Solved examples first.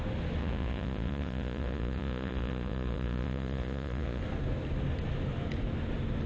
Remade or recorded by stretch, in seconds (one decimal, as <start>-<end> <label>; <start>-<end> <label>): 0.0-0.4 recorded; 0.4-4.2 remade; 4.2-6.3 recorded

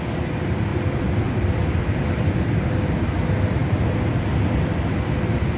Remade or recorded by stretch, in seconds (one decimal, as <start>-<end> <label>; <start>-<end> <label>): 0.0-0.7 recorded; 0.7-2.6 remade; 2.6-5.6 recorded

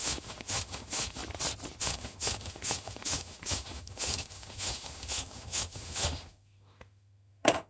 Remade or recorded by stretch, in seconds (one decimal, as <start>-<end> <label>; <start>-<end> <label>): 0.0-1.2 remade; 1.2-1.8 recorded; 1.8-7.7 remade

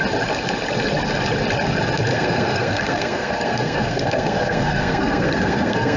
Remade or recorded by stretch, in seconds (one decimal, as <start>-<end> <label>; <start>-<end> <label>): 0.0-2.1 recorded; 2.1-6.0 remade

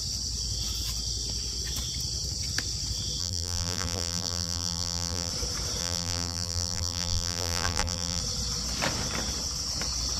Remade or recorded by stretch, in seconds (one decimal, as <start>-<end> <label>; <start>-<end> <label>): 0.0-3.2 recorded; 3.2-5.3 remade; 5.3-5.8 recorded; 5.8-8.2 remade; 8.2-10.2 recorded

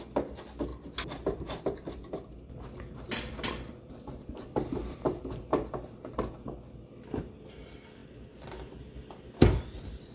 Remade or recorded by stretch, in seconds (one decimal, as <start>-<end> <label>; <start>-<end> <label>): 0.0-0.7 recorded; 0.7-5.3 remade; 5.3-10.1 recorded

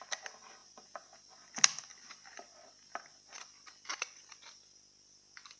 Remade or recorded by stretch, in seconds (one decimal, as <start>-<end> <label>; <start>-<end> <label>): 0.0-5.6 recorded

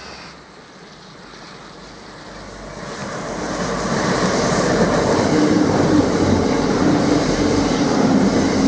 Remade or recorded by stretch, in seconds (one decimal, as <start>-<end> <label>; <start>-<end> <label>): 0.0-3.0 recorded; 3.0-8.2 remade; 8.2-8.7 recorded